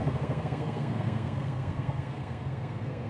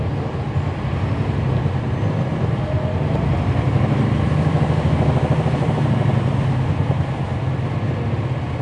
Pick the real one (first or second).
second